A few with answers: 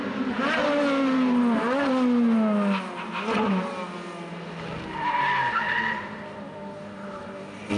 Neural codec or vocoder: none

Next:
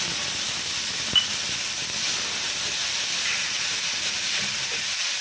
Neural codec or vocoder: none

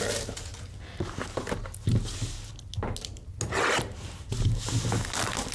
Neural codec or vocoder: none